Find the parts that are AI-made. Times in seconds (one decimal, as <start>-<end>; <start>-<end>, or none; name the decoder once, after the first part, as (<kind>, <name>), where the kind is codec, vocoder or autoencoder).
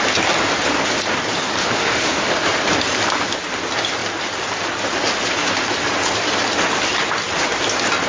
1.6-2.3 (autoencoder, DAC-VAE)